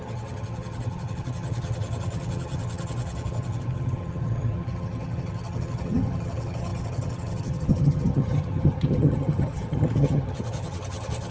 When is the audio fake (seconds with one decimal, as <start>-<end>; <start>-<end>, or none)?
0.0-11.3